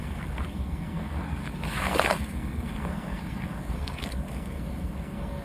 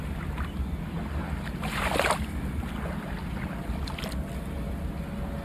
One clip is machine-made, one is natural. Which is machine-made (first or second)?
first